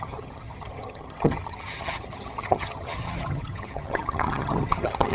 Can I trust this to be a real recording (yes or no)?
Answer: no